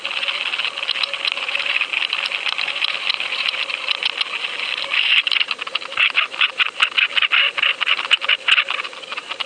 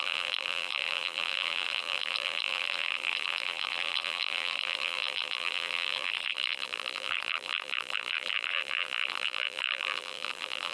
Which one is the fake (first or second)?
second